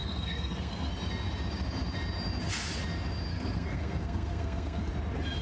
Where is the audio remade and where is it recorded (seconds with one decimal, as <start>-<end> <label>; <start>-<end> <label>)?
0.0-0.9 remade; 0.9-3.3 recorded; 3.3-4.9 remade; 4.9-5.4 recorded